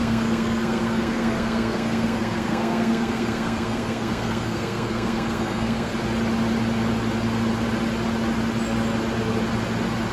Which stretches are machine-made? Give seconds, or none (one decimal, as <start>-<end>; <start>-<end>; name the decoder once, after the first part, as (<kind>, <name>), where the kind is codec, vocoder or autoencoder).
0.0-5.9 (codec, SNAC)